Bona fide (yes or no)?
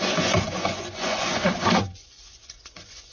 no